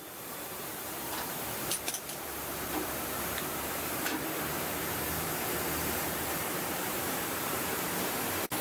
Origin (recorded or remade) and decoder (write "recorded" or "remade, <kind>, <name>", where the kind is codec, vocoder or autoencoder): remade, vocoder, BigVGAN v2